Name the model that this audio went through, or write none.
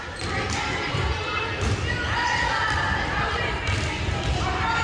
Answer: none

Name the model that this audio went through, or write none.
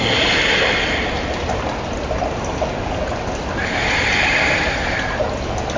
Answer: none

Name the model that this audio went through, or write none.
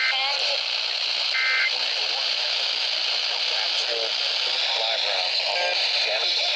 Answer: none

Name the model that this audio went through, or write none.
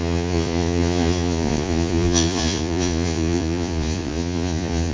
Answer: vocoder, Vocos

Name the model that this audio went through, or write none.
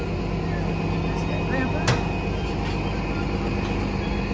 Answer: none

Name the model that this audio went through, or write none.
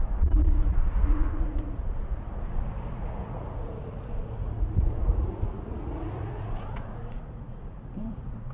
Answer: vocoder, Vocos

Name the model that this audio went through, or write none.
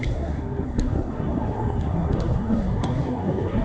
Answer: codec, SNAC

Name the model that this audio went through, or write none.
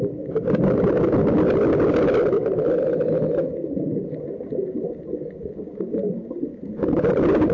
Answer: none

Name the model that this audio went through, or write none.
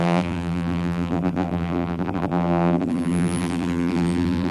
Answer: vocoder, BigVGAN v2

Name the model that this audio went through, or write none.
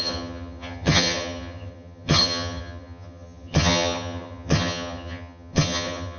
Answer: vocoder, HiFi-GAN